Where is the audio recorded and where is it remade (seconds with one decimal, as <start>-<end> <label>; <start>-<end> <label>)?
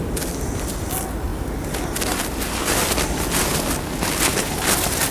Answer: 0.0-5.1 recorded